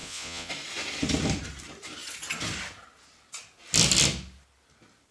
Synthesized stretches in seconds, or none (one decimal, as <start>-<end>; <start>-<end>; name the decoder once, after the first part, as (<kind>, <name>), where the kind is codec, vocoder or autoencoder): 0.0-0.5 (vocoder, Vocos)